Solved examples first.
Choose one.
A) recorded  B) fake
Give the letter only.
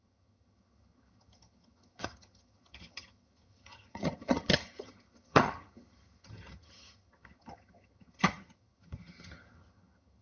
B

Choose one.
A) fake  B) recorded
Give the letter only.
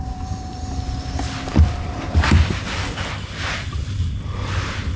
B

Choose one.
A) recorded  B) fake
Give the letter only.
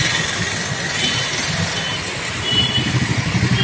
A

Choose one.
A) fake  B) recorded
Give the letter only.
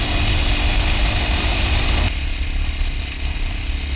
B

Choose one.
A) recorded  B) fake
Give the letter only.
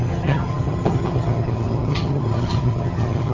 B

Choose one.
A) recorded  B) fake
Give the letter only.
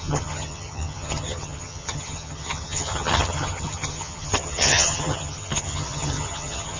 B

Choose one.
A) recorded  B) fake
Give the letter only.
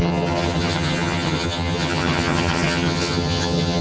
B